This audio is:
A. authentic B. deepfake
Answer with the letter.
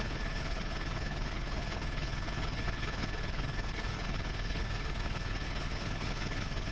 B